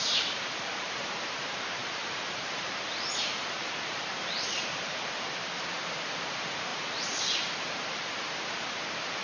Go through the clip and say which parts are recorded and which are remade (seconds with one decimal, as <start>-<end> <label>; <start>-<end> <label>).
0.0-9.2 remade